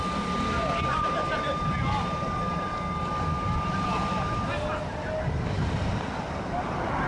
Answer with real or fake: real